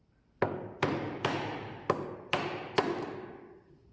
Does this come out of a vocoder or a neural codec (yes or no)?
no